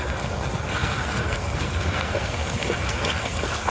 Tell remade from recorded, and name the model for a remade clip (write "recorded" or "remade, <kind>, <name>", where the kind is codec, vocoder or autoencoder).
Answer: remade, codec, SNAC